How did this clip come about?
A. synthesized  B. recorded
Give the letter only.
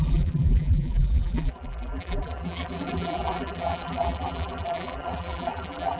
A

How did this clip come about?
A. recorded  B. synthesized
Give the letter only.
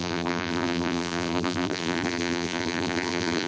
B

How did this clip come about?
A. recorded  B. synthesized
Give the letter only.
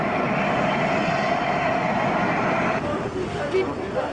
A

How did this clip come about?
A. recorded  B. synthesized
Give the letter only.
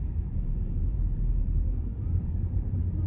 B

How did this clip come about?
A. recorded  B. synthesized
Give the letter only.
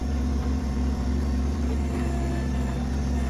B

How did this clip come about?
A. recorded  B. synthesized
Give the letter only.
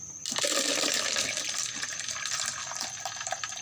A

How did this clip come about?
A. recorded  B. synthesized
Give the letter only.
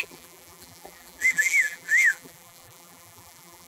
B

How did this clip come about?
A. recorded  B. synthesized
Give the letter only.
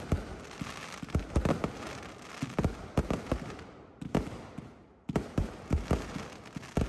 A